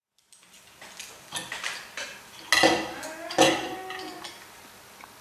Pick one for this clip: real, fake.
real